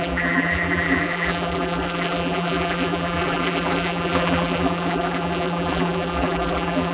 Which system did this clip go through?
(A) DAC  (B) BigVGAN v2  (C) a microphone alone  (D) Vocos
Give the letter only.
B